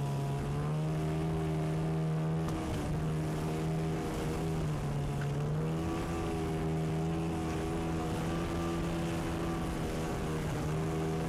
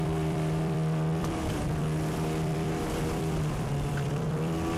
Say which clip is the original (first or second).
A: first